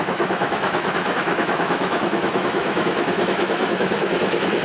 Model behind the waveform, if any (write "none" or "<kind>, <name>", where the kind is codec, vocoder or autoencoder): autoencoder, DAC-VAE